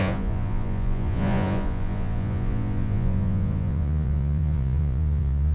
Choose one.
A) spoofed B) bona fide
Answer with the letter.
A